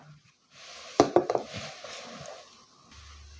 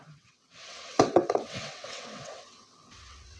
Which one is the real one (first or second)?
first